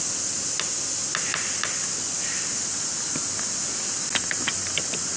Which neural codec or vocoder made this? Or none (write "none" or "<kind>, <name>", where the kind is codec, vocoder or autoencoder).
none